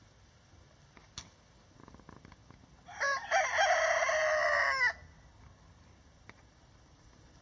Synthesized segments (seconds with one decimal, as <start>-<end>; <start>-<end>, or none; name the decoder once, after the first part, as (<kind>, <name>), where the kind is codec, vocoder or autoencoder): none